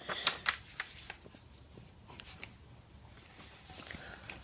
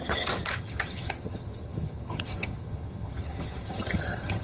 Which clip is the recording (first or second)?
first